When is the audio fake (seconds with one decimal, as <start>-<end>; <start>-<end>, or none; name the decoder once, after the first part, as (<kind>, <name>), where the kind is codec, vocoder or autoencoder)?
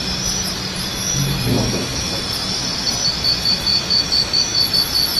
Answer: 0.9-2.2 (autoencoder, DAC-VAE)